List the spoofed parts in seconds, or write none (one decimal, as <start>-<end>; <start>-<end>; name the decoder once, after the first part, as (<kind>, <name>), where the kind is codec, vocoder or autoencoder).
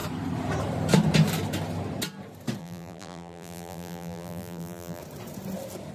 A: 2.6-5.0 (vocoder, BigVGAN v2)